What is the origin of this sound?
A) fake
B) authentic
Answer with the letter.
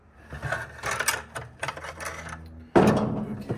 B